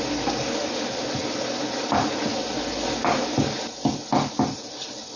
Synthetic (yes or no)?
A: no